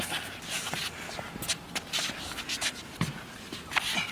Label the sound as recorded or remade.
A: recorded